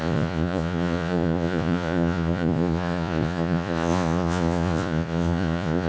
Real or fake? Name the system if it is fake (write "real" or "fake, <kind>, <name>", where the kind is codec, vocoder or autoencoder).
fake, vocoder, Vocos